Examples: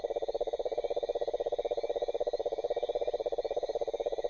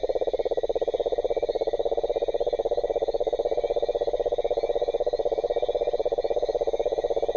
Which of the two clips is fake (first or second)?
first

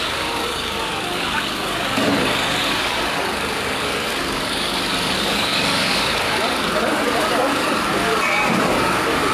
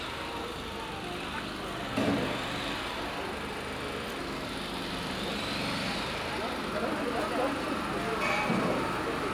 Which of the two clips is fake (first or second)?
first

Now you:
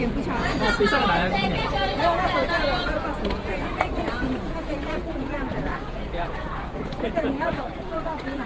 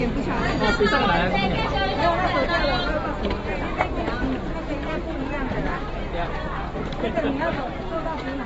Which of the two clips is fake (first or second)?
first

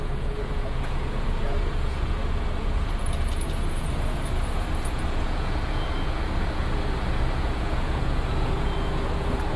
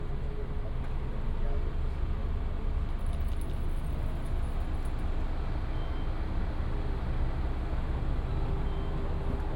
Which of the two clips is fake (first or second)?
first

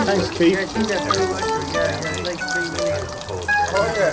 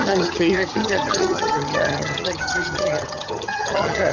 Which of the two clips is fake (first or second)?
second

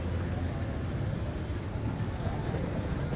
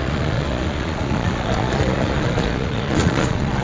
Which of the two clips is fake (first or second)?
second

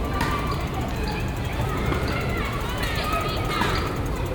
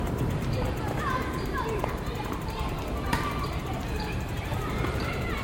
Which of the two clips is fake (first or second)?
second